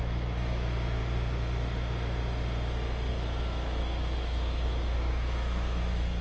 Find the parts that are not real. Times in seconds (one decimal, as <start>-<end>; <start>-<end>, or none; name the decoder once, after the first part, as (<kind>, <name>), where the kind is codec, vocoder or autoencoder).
0.0-1.0 (autoencoder, DAC-VAE); 3.1-6.2